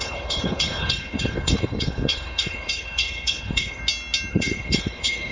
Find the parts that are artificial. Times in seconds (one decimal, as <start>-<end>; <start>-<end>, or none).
0.0-3.8; 4.3-5.3